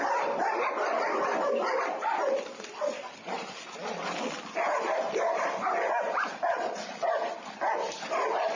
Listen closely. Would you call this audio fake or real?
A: fake